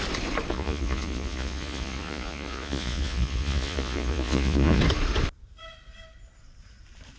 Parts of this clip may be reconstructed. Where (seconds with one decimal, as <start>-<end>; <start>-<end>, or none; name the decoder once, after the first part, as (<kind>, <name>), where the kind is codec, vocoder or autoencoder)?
0.5-4.8 (vocoder, Vocos)